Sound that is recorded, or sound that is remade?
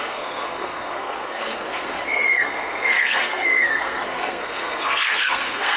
remade